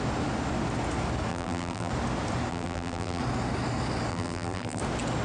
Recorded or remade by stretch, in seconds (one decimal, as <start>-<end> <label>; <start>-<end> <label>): 0.0-1.3 recorded; 1.3-1.9 remade; 1.9-2.5 recorded; 2.5-3.2 remade; 3.2-4.1 recorded; 4.1-4.8 remade; 4.8-5.2 recorded